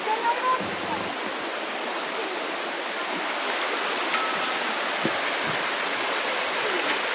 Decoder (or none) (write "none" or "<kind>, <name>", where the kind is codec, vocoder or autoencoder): none